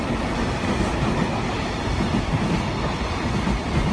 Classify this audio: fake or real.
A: real